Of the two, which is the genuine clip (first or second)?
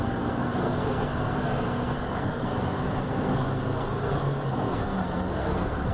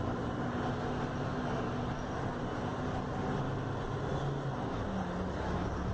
second